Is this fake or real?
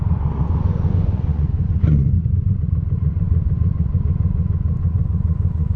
fake